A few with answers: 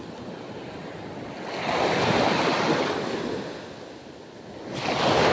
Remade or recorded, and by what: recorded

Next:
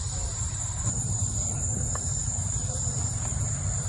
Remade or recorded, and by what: remade, vocoder, BigVGAN v2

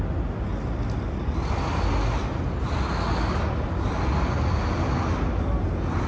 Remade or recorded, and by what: recorded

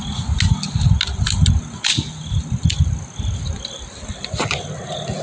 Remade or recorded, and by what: recorded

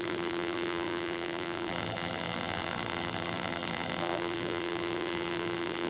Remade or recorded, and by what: remade, vocoder, BigVGAN v2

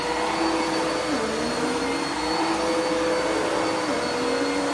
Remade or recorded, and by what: recorded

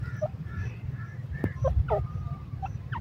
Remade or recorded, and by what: remade, vocoder, BigVGAN v2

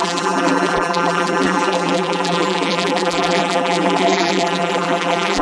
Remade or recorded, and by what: remade, vocoder, BigVGAN v2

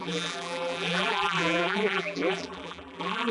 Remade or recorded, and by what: remade, vocoder, BigVGAN v2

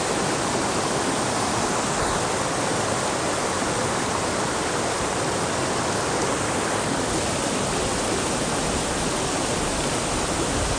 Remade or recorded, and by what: recorded